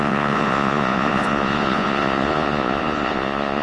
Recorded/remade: remade